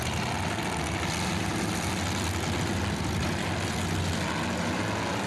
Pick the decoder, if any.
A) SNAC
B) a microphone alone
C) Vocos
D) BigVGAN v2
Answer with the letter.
B